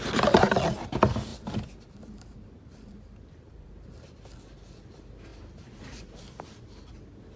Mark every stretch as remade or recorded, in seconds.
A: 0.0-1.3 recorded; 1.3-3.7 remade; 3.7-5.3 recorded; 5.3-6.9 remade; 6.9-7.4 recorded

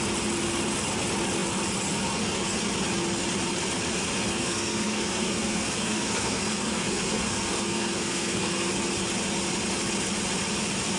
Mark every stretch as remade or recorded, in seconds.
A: 0.0-4.3 recorded; 4.3-8.7 remade; 8.7-11.0 recorded

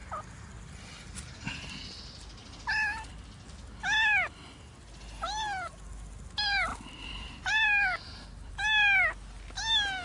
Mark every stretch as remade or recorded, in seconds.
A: 0.0-2.7 recorded; 2.7-3.3 remade; 3.3-6.7 recorded; 6.7-8.5 remade; 8.5-10.0 recorded

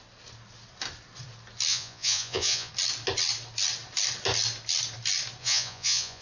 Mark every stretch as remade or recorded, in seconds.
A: 0.0-1.7 recorded; 1.7-2.7 remade; 2.7-5.4 recorded; 5.4-6.2 remade